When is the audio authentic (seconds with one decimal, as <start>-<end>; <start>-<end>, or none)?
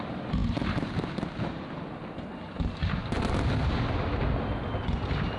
0.0-5.4